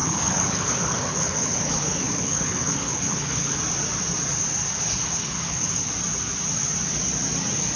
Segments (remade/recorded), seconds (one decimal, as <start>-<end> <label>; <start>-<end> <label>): 0.0-3.6 remade; 3.6-4.7 recorded; 4.7-5.9 remade; 5.9-7.8 recorded